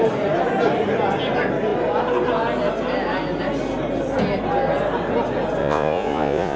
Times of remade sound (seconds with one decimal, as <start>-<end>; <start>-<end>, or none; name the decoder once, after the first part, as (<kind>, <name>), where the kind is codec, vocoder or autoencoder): 5.6-6.6 (vocoder, Vocos)

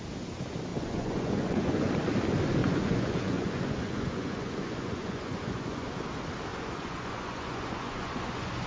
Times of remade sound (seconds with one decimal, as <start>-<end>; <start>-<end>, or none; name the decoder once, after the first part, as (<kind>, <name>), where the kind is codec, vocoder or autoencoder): 0.7-1.9 (vocoder, Vocos); 2.6-5.9; 6.5-8.7

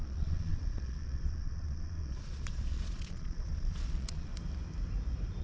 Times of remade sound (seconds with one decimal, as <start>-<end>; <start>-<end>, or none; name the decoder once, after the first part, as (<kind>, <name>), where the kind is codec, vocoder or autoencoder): 0.0-4.3 (vocoder, Vocos)

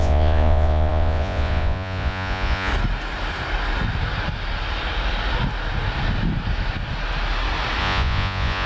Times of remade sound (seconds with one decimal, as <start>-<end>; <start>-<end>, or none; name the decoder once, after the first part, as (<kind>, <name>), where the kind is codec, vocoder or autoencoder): 0.0-2.7 (vocoder, Vocos); 7.8-8.7

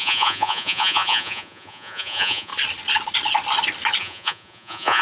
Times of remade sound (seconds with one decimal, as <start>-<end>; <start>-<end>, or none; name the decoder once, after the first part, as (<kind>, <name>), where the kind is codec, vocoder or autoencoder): 0.0-2.5 (vocoder, Vocos); 4.0-5.0

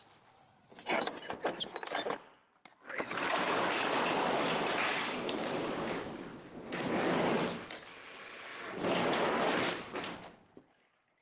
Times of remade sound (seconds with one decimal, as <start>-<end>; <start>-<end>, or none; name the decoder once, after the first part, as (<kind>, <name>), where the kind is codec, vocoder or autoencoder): none

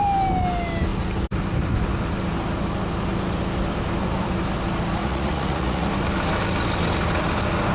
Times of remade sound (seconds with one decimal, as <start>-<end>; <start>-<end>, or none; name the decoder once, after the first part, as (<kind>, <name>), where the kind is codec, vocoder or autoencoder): 5.0-5.9 (vocoder, Vocos)